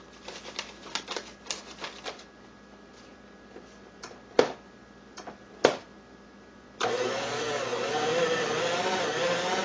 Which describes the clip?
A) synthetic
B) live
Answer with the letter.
B